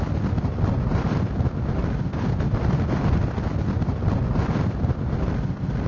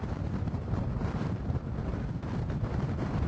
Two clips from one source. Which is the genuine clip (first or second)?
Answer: first